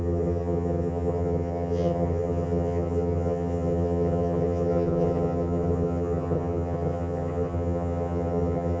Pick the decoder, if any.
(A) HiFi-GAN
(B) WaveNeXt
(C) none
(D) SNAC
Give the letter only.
A